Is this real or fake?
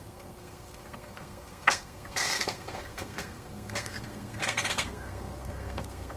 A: fake